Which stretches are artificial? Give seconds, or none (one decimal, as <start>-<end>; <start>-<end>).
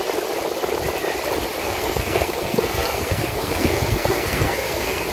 1.6-5.1